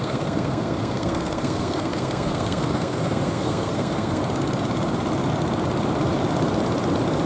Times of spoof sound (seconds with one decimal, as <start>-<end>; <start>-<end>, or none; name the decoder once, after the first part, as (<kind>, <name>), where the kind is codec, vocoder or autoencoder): 0.0-4.2 (codec, SNAC)